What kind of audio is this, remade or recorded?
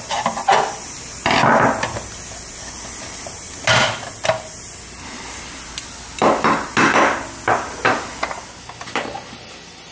recorded